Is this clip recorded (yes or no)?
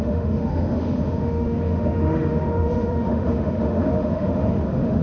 no